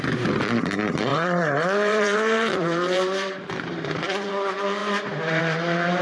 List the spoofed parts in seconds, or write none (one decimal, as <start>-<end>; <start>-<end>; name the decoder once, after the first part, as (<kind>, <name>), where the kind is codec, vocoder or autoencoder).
1.1-4.3 (vocoder, BigVGAN v2); 4.8-5.4